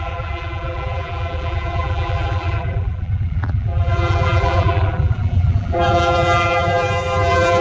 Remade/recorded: remade